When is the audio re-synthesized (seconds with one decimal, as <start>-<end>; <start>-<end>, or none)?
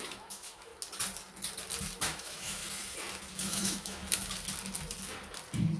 0.0-0.7; 2.0-2.6; 3.4-4.0